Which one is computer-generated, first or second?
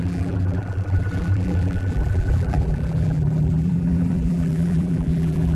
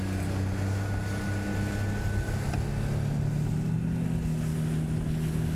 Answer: first